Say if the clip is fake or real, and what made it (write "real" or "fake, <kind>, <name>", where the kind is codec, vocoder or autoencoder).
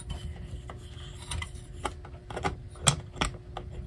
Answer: real